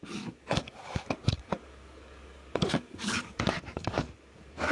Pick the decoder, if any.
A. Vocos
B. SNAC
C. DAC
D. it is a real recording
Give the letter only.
C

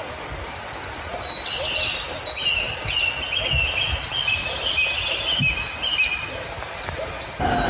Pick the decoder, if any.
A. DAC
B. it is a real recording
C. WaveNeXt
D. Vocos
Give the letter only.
B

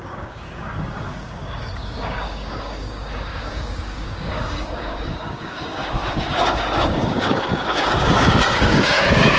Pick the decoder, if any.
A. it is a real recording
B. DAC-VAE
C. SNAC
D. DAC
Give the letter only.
D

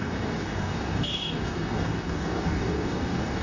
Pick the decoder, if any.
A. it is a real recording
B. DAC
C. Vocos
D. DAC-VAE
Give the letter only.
B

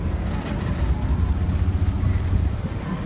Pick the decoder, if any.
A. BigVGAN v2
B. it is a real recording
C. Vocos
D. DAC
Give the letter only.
B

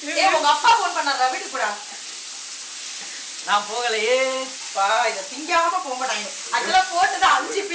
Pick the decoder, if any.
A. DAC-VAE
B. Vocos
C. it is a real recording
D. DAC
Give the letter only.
C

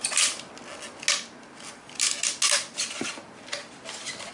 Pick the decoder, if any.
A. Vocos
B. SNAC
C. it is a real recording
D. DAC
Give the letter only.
C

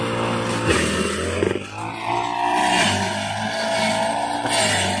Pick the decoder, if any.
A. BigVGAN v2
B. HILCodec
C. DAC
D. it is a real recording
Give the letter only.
D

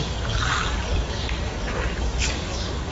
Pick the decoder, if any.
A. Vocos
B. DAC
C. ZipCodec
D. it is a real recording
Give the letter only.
B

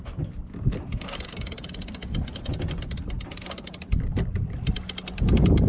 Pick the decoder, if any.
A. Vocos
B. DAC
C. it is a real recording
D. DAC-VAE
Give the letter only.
C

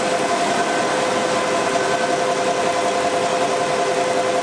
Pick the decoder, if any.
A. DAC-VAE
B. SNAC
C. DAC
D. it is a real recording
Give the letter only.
D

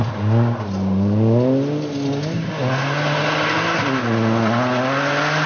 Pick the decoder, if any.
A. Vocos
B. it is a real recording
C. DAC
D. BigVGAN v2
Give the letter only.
B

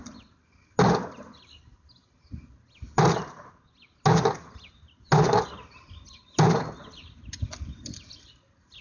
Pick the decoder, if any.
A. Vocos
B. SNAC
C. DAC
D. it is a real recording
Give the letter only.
D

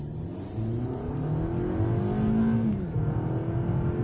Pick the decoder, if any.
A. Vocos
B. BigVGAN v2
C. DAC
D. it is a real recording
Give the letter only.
D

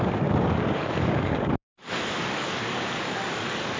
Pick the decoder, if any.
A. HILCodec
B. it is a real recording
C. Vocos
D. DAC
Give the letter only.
D